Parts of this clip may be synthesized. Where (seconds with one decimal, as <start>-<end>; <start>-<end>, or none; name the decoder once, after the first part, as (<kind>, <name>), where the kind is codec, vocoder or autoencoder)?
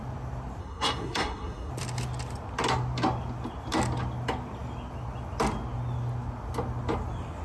0.6-1.7 (codec, SNAC)